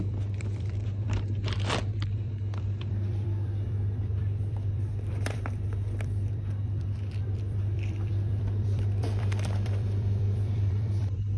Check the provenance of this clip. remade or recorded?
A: remade